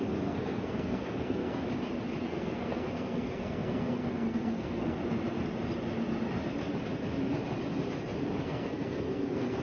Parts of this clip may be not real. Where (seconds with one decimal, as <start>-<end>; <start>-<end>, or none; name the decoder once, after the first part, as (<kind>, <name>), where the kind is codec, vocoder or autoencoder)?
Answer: 0.0-1.6 (codec, SNAC); 2.2-5.0; 8.4-9.6